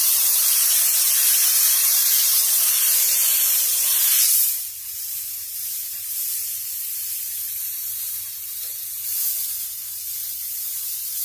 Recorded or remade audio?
recorded